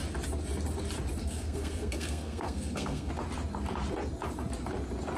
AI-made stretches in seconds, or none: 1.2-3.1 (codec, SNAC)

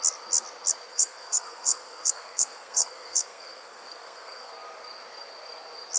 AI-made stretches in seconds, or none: 0.9-4.5 (codec, SNAC)

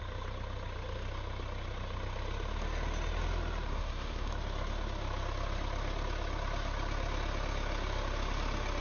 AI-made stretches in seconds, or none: 3.7-4.3 (codec, SNAC)

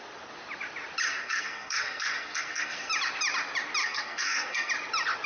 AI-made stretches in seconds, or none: 1.1-2.9 (codec, SNAC); 3.8-4.7